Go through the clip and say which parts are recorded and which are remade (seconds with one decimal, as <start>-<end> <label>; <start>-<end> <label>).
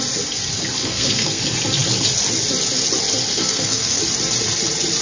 0.0-0.8 recorded; 0.8-1.4 remade; 1.4-3.3 recorded; 3.3-4.0 remade; 4.0-5.0 recorded